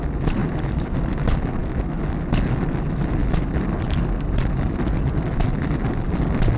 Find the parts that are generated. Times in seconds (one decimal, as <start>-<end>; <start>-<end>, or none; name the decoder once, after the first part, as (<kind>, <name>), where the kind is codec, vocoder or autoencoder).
0.4-1.1 (vocoder, BigVGAN v2)